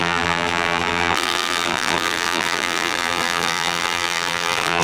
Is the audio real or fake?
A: fake